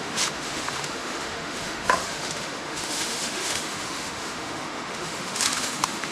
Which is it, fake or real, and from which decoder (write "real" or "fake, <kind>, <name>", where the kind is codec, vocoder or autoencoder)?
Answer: fake, autoencoder, DAC-VAE